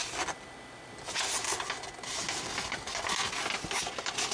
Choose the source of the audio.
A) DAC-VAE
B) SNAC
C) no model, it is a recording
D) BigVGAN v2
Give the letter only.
C